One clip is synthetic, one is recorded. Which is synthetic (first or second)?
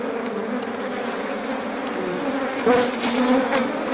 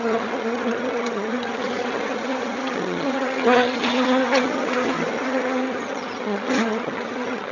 second